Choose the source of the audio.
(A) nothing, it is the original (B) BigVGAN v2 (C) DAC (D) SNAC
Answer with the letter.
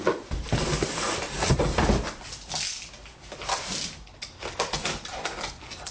A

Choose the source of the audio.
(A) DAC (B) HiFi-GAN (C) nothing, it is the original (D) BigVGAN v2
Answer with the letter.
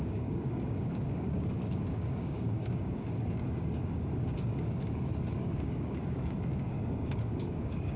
A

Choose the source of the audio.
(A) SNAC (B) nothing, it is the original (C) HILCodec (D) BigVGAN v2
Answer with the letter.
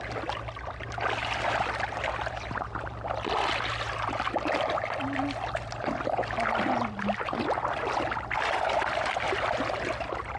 B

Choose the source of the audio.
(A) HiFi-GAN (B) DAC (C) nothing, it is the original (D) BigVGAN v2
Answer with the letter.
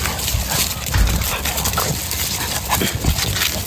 C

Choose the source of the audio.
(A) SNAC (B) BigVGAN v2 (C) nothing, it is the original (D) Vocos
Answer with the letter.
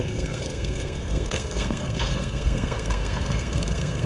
A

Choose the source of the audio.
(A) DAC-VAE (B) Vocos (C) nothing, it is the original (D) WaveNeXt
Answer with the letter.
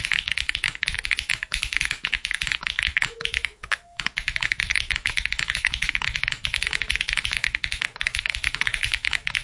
A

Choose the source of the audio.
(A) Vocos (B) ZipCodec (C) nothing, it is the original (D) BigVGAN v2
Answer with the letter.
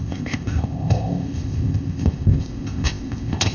B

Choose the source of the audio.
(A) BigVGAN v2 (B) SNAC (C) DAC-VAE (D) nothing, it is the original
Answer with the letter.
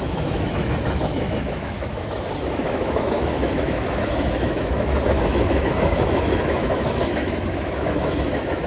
C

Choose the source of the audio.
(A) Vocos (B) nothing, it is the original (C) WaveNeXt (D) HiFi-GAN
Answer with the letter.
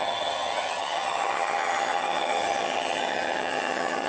D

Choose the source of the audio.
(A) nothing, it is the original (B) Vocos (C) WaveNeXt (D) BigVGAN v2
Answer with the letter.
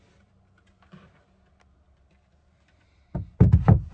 A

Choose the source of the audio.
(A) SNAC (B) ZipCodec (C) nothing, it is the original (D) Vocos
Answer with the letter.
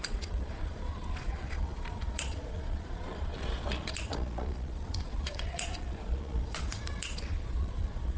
D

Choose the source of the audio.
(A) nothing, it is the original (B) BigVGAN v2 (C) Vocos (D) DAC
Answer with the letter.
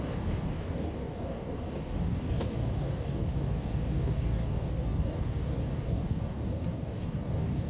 D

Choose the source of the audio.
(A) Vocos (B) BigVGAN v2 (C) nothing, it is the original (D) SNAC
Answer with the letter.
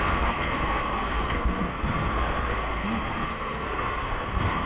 D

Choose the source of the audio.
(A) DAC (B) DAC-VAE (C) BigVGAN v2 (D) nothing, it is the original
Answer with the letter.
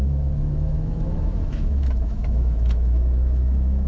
B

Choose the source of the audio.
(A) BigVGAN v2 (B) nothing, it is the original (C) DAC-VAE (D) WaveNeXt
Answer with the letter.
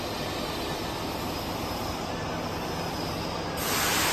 B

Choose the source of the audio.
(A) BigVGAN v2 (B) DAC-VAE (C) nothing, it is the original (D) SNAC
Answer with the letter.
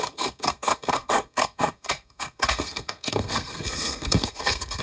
D